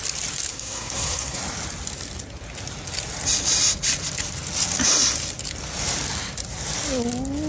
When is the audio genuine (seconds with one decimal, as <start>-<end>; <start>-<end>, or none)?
0.0-0.5; 1.4-7.5